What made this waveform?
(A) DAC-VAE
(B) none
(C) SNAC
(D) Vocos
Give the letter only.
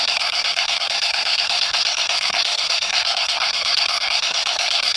C